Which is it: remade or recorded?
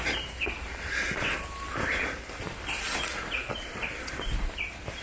recorded